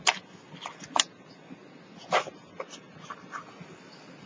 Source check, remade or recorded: recorded